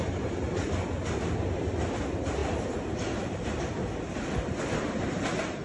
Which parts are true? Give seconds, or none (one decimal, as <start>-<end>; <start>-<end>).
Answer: 0.0-5.6